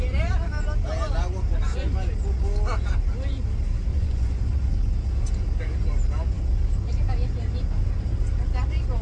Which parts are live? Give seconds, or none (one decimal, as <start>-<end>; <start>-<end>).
0.0-3.9; 4.4-9.0